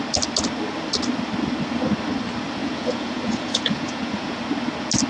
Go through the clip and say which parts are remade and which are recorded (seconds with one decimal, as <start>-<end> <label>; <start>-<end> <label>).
0.0-2.6 recorded; 2.6-4.4 remade; 4.4-5.1 recorded